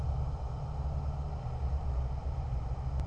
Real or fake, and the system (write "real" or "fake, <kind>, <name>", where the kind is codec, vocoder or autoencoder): real